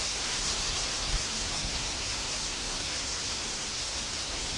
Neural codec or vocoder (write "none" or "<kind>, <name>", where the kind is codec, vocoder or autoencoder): codec, SNAC